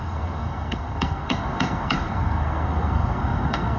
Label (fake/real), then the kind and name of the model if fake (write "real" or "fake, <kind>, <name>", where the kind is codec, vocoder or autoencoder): fake, codec, SNAC